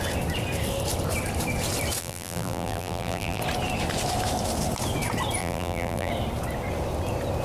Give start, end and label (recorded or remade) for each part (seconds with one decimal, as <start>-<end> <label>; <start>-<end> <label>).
0.0-2.0 recorded; 2.0-3.4 remade; 3.4-5.4 recorded; 5.4-6.1 remade; 6.1-7.4 recorded